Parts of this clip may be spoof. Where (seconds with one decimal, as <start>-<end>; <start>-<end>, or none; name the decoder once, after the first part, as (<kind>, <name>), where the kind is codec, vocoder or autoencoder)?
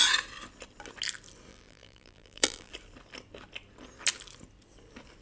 1.5-2.7 (vocoder, BigVGAN v2)